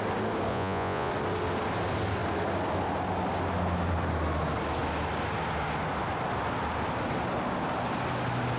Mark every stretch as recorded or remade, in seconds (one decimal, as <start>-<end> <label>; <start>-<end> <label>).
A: 0.0-0.5 recorded; 0.5-1.1 remade; 1.1-8.6 recorded